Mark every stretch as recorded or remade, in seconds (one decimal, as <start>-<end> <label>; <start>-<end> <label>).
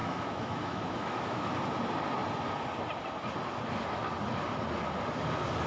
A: 0.0-1.5 remade; 1.5-5.7 recorded